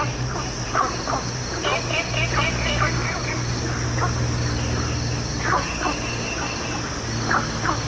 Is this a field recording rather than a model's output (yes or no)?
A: yes